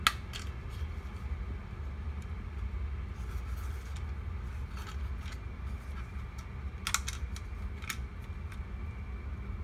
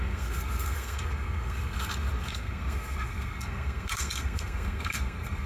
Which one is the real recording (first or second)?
first